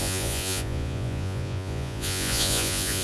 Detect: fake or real fake